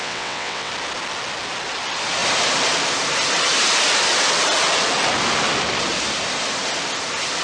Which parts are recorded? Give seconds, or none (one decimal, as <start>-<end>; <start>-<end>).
0.7-7.4